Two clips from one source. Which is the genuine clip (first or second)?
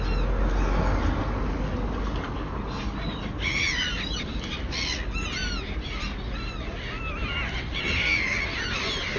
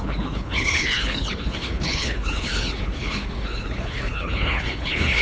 first